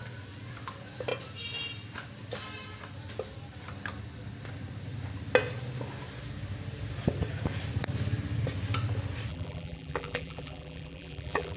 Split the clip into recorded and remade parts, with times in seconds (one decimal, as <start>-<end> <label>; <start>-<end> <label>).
0.0-9.3 recorded; 9.3-11.6 remade